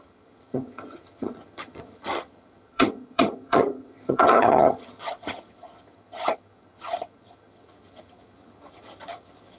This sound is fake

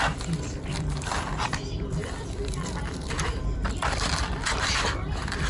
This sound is fake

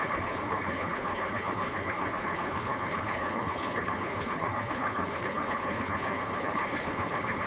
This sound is fake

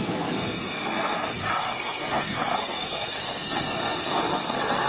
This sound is fake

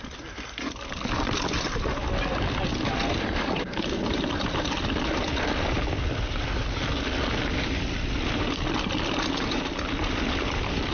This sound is real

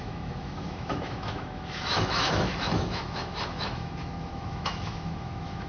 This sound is fake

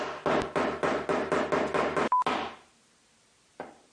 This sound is real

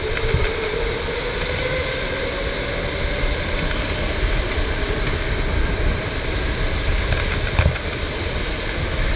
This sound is real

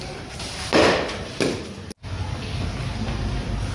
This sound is real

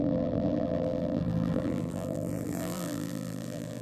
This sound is fake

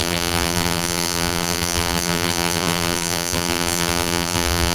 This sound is fake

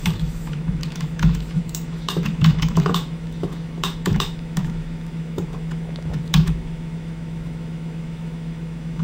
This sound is fake